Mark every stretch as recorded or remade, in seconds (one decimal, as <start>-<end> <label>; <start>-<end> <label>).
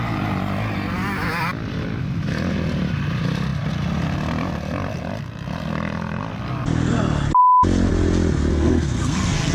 0.0-8.5 recorded; 8.5-9.5 remade